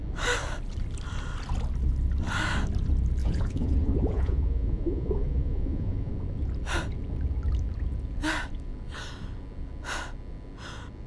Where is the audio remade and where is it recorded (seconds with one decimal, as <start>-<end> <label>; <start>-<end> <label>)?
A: 0.0-3.2 recorded; 3.2-6.1 remade; 6.1-11.1 recorded